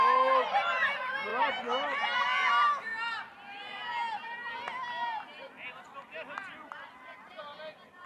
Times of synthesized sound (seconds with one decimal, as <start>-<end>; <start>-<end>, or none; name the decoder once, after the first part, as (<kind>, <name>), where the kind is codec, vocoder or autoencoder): none